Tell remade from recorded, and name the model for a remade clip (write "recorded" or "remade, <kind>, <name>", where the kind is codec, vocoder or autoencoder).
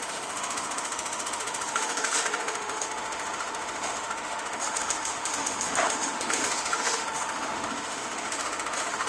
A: remade, autoencoder, DAC-VAE